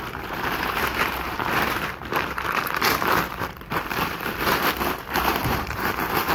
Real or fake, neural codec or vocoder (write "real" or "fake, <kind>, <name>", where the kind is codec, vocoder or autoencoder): fake, vocoder, BigVGAN v2